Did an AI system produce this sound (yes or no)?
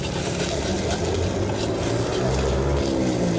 no